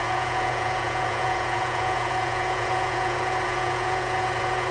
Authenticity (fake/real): fake